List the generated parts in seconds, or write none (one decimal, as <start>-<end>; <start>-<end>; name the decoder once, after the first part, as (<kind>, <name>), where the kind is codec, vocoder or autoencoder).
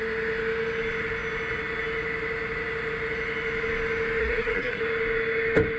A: 4.2-4.8 (codec, SNAC)